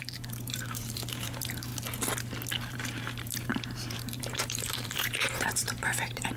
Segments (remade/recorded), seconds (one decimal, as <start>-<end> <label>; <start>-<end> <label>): 0.0-1.7 remade; 1.7-2.7 recorded; 2.7-6.4 remade

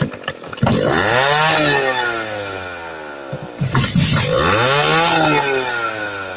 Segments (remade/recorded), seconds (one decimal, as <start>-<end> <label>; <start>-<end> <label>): 0.0-6.4 recorded